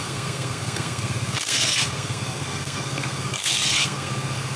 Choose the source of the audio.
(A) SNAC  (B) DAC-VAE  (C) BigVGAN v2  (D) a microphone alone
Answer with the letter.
A